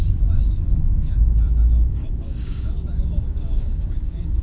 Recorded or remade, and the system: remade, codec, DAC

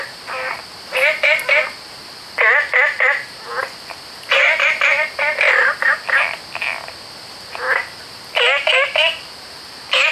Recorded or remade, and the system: recorded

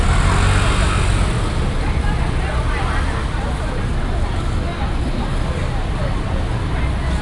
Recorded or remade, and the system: recorded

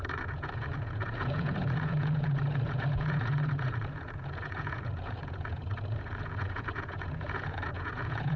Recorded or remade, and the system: remade, vocoder, Vocos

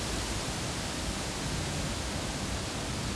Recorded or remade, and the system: recorded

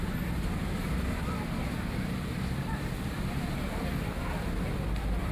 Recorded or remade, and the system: recorded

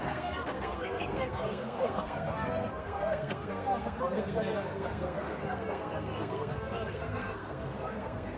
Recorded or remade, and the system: remade, codec, SNAC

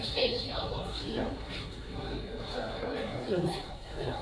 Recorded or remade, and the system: remade, codec, SNAC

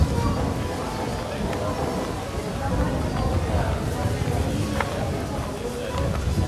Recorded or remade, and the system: recorded